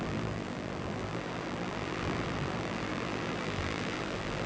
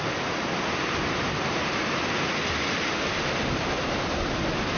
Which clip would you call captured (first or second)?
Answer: second